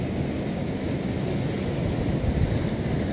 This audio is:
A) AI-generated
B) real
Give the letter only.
B